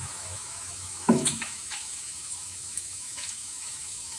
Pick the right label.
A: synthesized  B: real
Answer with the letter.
A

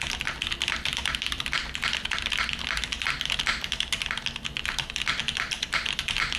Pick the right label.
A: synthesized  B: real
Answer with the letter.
B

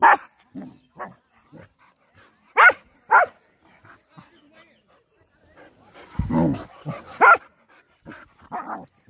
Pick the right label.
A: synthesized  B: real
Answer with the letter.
B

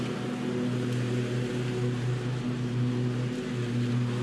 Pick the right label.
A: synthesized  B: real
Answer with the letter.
B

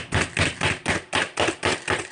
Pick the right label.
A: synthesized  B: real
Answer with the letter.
B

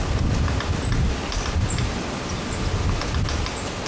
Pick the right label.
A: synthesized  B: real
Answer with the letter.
B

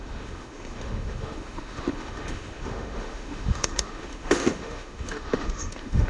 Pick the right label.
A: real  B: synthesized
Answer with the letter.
B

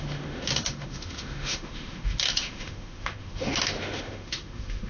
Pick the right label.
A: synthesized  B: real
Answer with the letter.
A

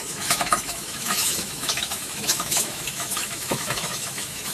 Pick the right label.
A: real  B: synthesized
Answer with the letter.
B